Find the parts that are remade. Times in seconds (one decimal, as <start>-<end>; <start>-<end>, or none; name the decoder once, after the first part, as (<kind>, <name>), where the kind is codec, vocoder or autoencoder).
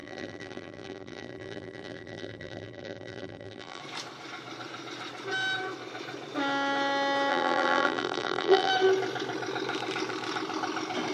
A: 0.0-3.8 (vocoder, BigVGAN v2); 7.3-8.7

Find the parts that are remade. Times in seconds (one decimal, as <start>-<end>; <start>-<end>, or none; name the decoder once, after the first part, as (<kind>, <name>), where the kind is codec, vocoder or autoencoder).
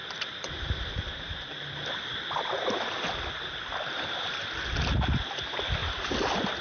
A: 0.0-4.0 (vocoder, BigVGAN v2); 5.8-6.6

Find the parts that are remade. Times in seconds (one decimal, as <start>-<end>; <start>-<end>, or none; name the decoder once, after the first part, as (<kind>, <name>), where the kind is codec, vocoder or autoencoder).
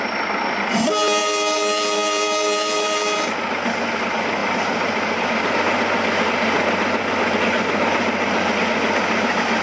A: 1.2-3.3 (vocoder, BigVGAN v2); 4.4-5.5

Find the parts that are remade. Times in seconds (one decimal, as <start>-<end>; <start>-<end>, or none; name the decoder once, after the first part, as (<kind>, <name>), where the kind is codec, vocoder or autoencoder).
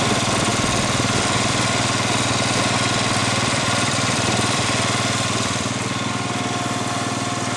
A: 0.5-1.5 (vocoder, BigVGAN v2); 3.2-6.1